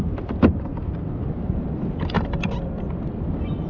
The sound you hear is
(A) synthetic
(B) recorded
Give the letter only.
B